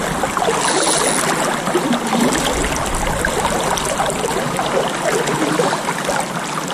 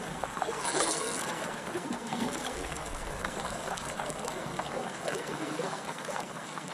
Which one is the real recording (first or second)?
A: first